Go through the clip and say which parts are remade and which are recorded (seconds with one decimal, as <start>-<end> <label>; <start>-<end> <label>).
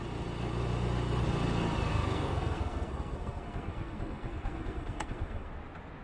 0.0-1.9 recorded; 1.9-5.5 remade; 5.5-6.0 recorded